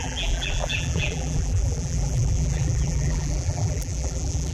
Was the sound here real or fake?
fake